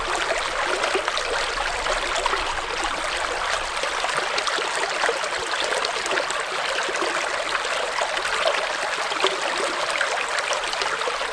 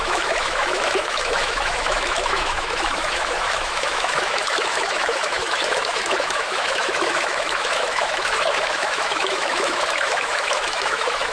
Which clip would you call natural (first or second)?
first